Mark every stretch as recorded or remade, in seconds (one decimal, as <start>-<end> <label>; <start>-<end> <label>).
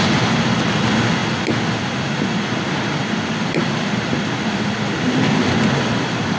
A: 0.0-6.4 recorded